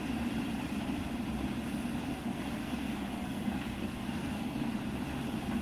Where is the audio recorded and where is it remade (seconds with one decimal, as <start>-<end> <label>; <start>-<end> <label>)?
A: 0.0-2.1 recorded; 2.1-4.7 remade; 4.7-5.6 recorded